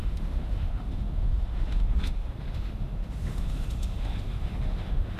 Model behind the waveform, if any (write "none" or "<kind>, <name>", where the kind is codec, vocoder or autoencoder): autoencoder, DAC-VAE